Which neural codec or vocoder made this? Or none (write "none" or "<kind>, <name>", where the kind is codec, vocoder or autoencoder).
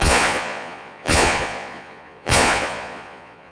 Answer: vocoder, Vocos